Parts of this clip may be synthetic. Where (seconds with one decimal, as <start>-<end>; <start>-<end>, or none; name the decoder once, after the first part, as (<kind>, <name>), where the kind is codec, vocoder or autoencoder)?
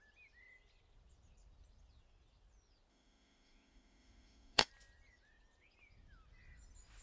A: 2.9-4.7 (autoencoder, DAC-VAE)